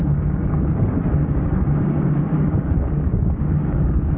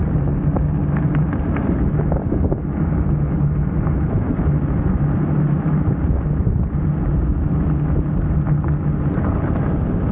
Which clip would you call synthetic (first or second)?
first